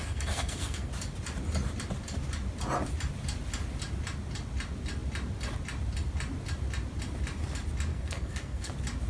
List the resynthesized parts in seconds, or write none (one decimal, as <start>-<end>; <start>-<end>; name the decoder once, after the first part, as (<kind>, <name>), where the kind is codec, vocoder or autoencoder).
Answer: 0.0-0.9 (codec, SNAC); 7.9-8.7